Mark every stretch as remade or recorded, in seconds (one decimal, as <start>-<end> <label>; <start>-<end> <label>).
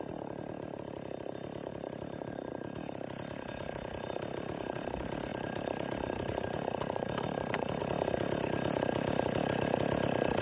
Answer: 0.0-1.7 recorded; 1.7-2.5 remade; 2.5-5.3 recorded; 5.3-7.8 remade; 7.8-10.4 recorded